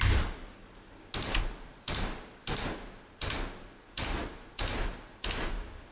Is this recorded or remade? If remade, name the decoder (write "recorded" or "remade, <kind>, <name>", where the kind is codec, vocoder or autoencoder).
recorded